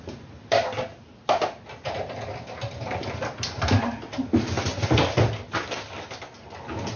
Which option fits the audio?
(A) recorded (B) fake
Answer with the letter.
A